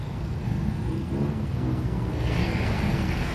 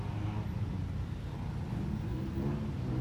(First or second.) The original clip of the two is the second